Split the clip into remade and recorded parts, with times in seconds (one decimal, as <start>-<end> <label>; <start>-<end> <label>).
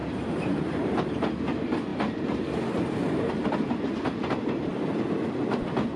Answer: 0.0-1.3 remade; 1.3-1.9 recorded; 1.9-3.3 remade; 3.3-6.0 recorded